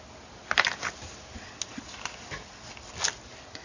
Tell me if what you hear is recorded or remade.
recorded